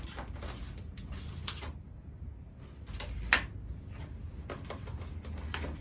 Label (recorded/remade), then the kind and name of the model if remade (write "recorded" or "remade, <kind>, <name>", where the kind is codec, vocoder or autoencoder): recorded